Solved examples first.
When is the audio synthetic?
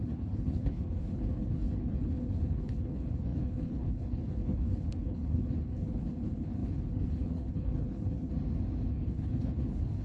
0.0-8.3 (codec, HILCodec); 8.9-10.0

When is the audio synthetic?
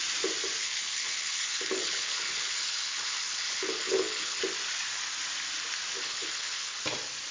0.6-4.4 (codec, HILCodec); 6.0-6.8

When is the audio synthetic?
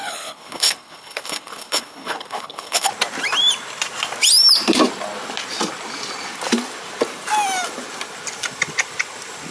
0.0-2.9 (codec, HILCodec)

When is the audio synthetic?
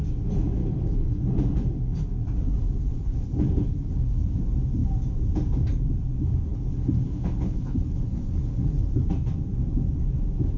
0.6-1.2 (codec, HILCodec); 2.8-4.3; 6.5-8.9